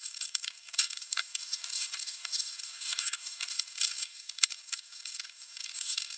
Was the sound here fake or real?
fake